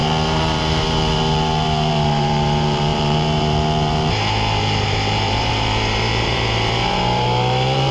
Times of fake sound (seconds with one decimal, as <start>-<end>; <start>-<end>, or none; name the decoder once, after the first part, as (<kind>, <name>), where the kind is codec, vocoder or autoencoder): 0.0-7.9 (vocoder, BigVGAN v2)

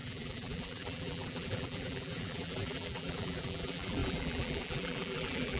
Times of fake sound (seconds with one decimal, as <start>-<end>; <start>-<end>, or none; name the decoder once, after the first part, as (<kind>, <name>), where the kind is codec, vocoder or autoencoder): 0.0-5.6 (vocoder, BigVGAN v2)

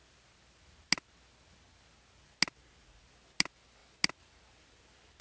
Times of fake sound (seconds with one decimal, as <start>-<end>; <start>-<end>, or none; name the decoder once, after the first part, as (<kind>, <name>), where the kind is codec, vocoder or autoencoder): none

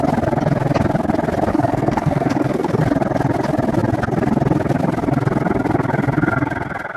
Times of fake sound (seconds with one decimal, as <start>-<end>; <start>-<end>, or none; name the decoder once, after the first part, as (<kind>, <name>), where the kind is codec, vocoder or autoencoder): 1.5-2.8 (codec, SNAC)

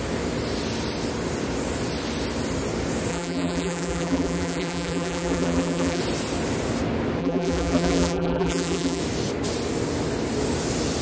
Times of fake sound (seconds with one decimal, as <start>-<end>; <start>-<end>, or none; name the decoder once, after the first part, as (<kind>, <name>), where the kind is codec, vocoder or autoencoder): 3.1-6.0 (vocoder, BigVGAN v2); 7.2-9.0

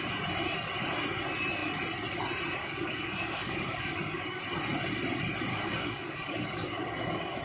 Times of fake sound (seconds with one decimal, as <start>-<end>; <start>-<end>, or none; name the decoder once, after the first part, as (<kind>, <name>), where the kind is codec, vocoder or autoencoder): 2.6-4.4 (codec, DAC); 5.5-7.4

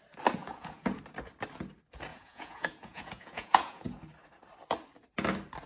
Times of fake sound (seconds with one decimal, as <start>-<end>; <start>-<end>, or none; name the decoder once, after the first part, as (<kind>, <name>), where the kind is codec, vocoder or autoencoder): 0.4-1.0 (vocoder, Vocos); 2.1-4.0

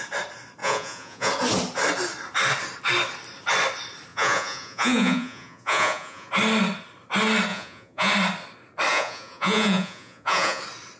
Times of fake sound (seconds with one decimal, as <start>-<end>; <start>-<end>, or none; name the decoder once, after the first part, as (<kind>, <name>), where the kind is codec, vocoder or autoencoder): 0.6-1.3 (vocoder, Vocos); 4.1-6.3; 7.5-8.1; 8.9-10.6